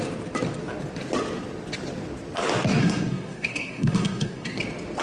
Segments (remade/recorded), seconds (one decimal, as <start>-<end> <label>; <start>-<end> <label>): 0.0-2.8 recorded; 2.8-4.6 remade; 4.6-5.0 recorded